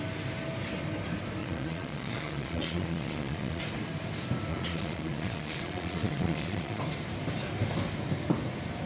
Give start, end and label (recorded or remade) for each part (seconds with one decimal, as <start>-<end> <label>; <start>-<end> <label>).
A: 0.0-1.4 recorded; 1.4-3.6 remade; 3.6-4.5 recorded; 4.5-6.8 remade; 6.8-8.9 recorded